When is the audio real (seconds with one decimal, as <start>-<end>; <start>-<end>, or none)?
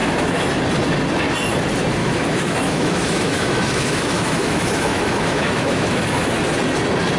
0.5-2.0; 6.3-7.2